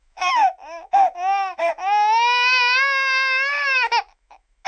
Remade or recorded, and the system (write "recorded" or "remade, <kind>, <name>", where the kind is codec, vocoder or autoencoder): remade, autoencoder, DAC-VAE